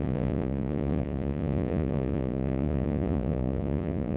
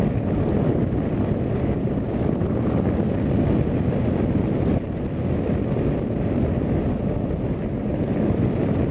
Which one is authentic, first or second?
second